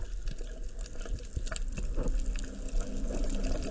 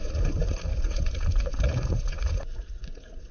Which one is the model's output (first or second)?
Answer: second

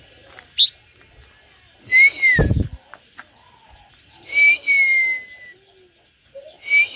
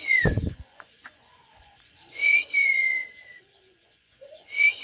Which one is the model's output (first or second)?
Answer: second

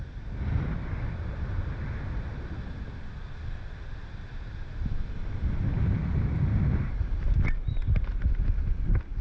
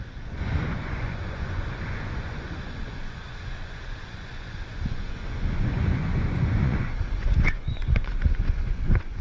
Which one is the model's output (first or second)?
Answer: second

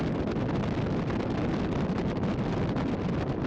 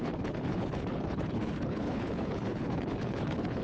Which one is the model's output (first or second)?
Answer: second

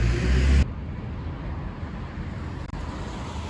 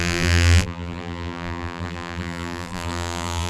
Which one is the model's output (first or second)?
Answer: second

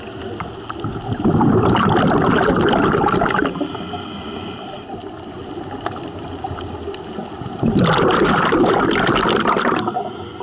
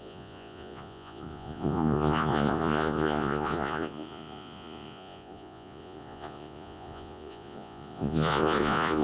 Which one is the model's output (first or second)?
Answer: second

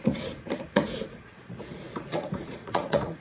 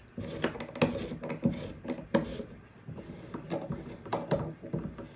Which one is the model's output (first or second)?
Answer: first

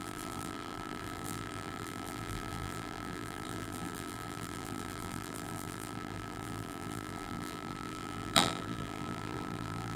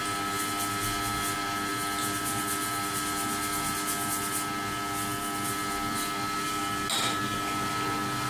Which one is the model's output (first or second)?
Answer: first